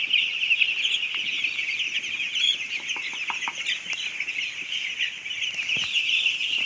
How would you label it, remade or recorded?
recorded